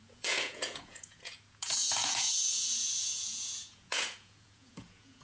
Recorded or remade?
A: remade